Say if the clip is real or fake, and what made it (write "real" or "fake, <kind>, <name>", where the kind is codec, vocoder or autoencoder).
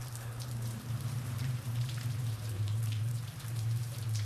fake, vocoder, BigVGAN v2